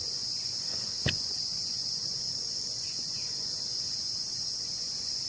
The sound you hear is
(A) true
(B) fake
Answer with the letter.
B